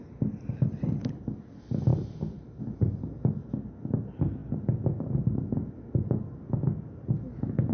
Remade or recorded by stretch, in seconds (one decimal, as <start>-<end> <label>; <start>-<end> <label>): 0.0-7.7 recorded